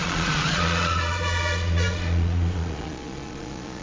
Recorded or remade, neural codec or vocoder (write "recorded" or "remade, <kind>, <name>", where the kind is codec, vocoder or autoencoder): remade, vocoder, Vocos